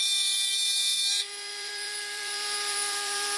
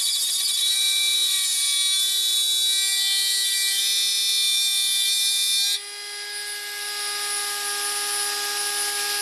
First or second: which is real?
second